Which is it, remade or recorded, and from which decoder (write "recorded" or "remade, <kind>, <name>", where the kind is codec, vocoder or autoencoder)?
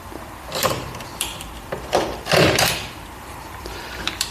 remade, vocoder, BigVGAN v2